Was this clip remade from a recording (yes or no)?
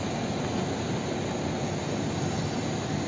no